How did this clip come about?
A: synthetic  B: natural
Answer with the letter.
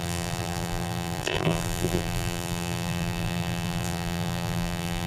A